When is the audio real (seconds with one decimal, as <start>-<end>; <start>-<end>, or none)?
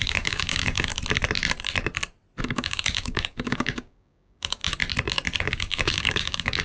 0.9-2.4; 4.6-5.4